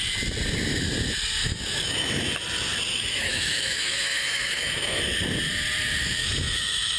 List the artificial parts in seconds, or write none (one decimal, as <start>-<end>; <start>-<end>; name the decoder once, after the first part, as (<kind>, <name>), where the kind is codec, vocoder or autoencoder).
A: 1.4-2.2 (autoencoder, DAC-VAE); 2.9-5.0; 6.2-7.0